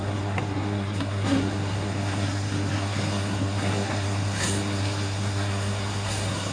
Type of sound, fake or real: fake